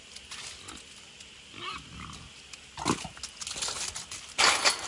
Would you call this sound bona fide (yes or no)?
yes